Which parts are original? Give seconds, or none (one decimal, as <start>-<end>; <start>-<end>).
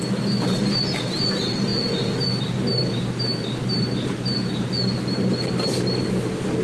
0.0-2.7; 4.7-6.6